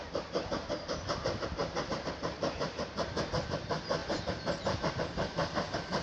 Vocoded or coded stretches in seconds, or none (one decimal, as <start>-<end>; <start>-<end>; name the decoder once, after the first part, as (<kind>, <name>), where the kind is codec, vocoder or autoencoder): 0.0-6.0 (vocoder, BigVGAN v2)